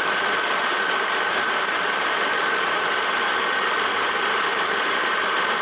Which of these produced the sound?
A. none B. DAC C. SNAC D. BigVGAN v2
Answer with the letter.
A